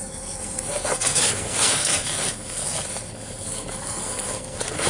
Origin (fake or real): fake